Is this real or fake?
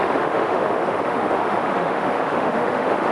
fake